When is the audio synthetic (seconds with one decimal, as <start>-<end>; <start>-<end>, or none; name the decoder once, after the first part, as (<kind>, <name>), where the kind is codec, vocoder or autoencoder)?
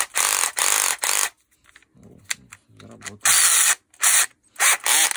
none